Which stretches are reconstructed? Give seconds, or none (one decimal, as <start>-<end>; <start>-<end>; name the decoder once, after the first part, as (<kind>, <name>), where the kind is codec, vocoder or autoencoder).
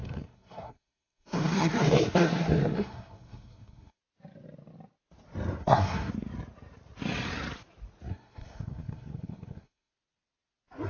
0.0-4.0 (codec, SNAC); 5.6-6.1; 8.1-9.9